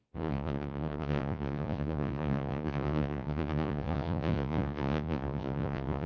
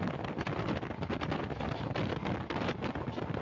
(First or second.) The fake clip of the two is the first